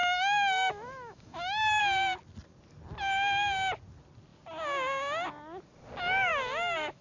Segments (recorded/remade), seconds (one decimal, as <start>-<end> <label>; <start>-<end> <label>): 0.0-1.8 remade; 1.8-6.3 recorded; 6.3-7.0 remade